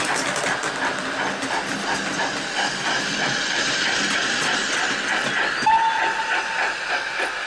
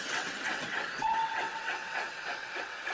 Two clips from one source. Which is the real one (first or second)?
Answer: first